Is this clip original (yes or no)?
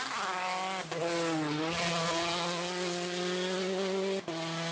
yes